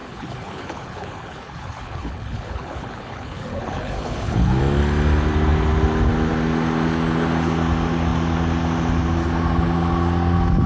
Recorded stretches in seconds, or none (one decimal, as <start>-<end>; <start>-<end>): 4.6-10.7